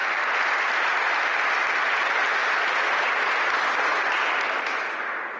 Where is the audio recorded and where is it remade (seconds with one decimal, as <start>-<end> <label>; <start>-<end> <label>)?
0.0-5.4 recorded

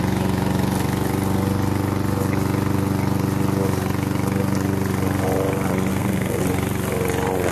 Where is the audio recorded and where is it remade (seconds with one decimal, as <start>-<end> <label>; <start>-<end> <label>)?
0.0-5.9 recorded; 5.9-6.4 remade; 6.4-7.5 recorded

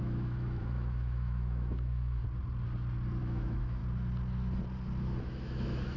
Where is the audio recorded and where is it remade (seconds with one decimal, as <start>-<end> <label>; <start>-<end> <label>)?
0.0-2.2 remade; 2.2-3.2 recorded; 3.2-3.8 remade; 3.8-5.2 recorded; 5.2-6.0 remade

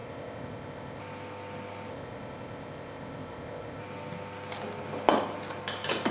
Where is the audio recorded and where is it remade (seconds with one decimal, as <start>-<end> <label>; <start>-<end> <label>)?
0.0-1.0 remade; 1.0-1.9 recorded; 1.9-3.8 remade; 3.8-6.1 recorded